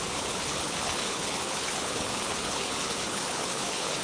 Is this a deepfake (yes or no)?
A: yes